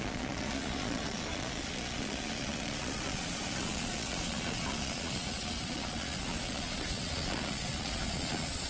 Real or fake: fake